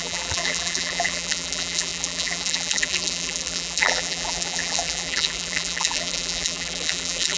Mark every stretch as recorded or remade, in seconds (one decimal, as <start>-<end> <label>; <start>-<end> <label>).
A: 0.0-7.4 remade